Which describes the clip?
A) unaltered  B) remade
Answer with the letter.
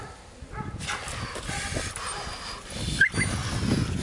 A